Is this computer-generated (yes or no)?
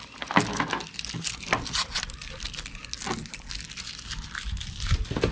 no